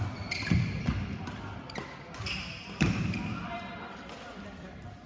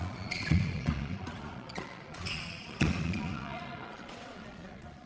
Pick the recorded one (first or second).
first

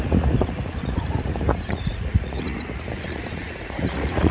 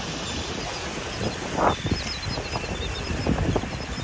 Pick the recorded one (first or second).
second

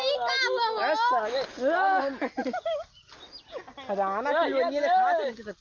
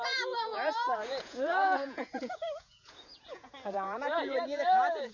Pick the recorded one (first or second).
first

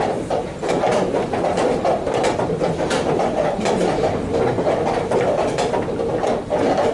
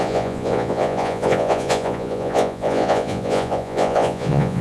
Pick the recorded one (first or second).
first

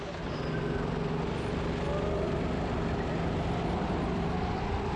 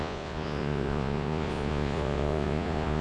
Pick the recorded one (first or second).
first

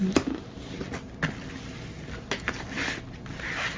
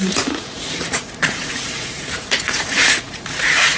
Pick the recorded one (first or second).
first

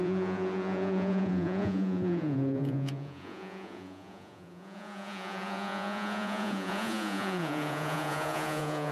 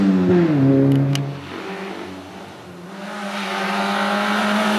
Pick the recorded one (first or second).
second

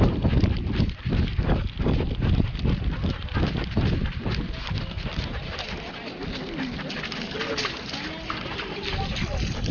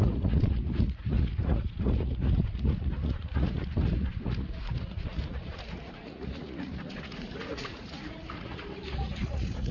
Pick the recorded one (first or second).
first